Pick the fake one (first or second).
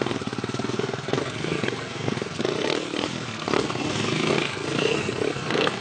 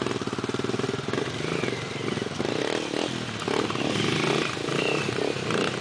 first